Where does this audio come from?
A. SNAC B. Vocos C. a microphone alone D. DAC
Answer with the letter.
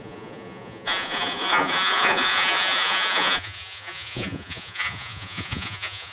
B